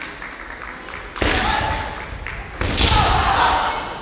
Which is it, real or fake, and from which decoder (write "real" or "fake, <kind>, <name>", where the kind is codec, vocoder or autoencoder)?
real